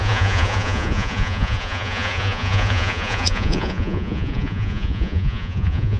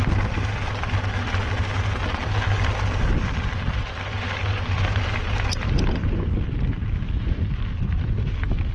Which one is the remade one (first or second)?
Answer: first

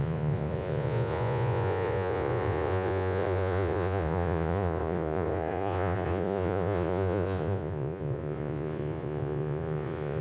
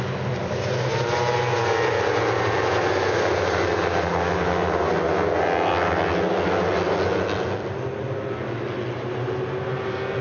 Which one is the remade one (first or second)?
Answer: first